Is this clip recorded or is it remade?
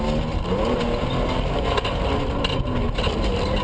recorded